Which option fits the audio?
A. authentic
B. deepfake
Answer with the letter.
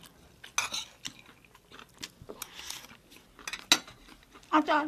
A